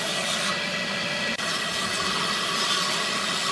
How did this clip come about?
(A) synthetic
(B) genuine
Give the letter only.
B